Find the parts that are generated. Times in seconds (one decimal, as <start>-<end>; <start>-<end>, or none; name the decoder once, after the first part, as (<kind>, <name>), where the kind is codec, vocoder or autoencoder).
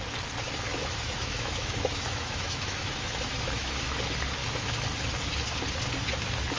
0.7-4.0 (autoencoder, DAC-VAE); 4.4-4.9